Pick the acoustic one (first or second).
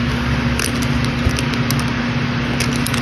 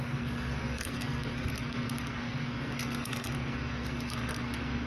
first